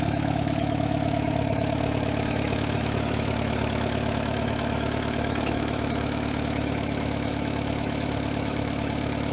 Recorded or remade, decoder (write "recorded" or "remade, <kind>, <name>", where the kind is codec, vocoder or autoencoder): remade, autoencoder, DAC-VAE